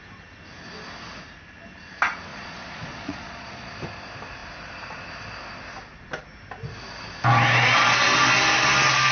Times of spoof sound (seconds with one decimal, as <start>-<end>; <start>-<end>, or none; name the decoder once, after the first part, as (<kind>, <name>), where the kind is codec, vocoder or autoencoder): 2.3-3.7 (vocoder, Vocos)